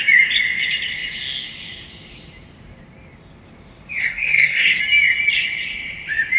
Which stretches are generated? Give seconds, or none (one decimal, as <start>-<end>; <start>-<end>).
4.0-4.8